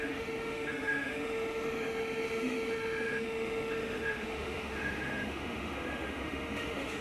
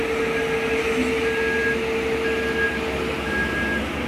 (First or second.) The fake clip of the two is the first